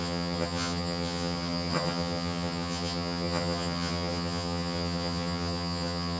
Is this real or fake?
fake